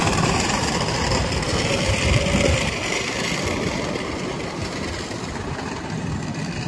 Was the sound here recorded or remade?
remade